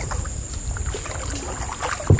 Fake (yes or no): no